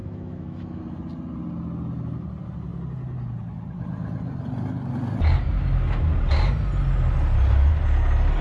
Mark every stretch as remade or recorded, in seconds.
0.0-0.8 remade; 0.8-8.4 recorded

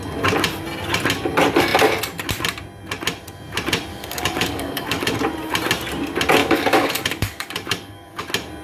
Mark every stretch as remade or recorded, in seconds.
0.0-3.9 recorded; 3.9-5.1 remade; 5.1-6.4 recorded; 6.4-8.2 remade; 8.2-8.6 recorded

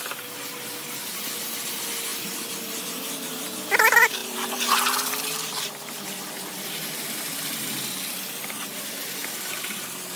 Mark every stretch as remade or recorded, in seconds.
0.0-2.1 recorded; 2.1-3.3 remade; 3.3-4.2 recorded; 4.2-7.6 remade; 7.6-9.2 recorded; 9.2-10.2 remade

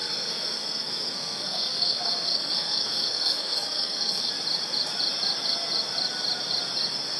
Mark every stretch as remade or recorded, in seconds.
0.0-4.3 remade; 4.3-7.2 recorded